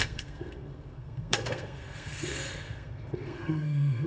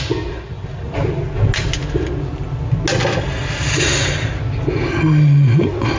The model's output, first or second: first